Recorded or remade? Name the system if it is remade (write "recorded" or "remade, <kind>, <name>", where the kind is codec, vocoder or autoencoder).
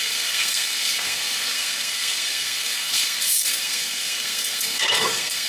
remade, codec, SNAC